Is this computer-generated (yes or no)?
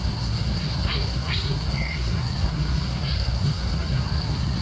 yes